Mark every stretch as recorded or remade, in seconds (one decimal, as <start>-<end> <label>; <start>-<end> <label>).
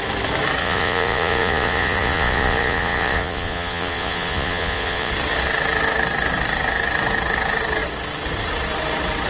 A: 0.0-0.6 recorded; 0.6-5.1 remade; 5.1-9.3 recorded